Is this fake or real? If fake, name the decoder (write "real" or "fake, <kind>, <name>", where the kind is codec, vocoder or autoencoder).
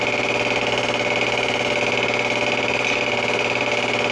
real